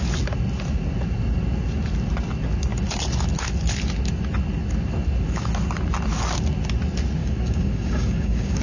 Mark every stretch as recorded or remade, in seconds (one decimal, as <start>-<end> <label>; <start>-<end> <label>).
0.0-7.2 recorded; 7.2-8.6 remade